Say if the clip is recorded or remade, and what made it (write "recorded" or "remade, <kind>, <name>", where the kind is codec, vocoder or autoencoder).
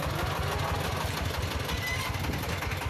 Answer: recorded